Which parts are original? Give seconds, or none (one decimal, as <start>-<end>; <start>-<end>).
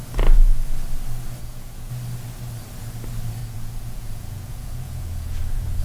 0.0-1.4; 1.9-3.4